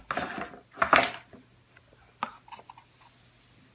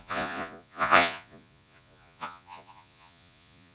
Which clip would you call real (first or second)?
first